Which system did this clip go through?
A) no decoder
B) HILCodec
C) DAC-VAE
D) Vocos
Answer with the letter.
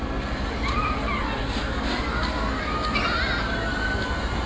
A